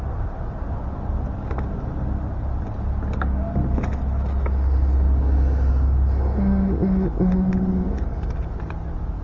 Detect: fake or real real